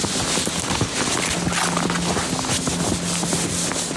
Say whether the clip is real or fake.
real